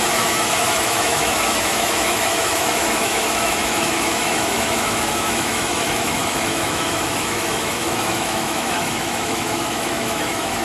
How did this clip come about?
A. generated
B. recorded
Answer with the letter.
A